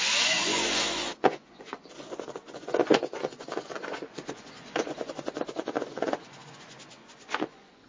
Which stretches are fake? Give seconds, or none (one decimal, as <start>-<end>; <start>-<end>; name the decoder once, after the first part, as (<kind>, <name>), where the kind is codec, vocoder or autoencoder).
0.0-7.9 (vocoder, Vocos)